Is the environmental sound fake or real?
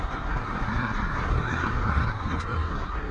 fake